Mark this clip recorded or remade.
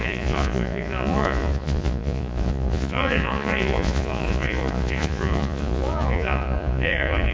remade